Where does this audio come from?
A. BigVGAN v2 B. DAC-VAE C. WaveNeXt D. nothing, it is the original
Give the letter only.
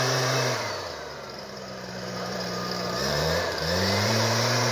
A